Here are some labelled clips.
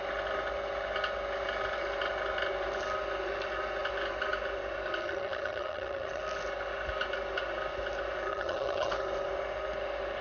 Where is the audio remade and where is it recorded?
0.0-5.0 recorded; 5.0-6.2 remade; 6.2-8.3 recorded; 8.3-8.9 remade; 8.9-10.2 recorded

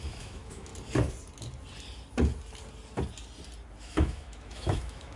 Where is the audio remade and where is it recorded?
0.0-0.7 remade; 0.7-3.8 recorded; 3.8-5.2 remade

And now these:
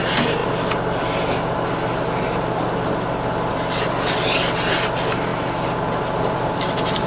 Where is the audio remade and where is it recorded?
0.0-7.1 recorded

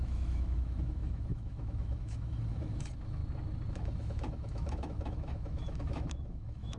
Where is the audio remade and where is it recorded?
0.0-3.2 remade; 3.2-3.7 recorded; 3.7-6.8 remade

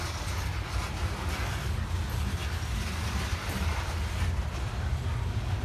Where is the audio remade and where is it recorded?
0.0-5.6 recorded

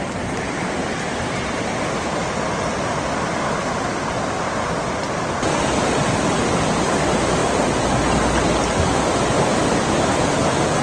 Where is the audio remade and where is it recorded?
0.0-10.8 recorded

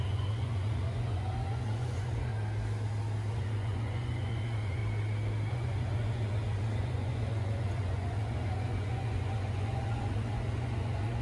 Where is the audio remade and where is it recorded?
0.0-2.3 remade; 2.3-3.3 recorded; 3.3-4.8 remade; 4.8-5.5 recorded; 5.5-11.2 remade

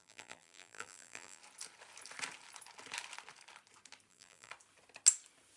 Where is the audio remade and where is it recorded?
0.0-1.4 remade; 1.4-4.1 recorded; 4.1-4.5 remade; 4.5-5.6 recorded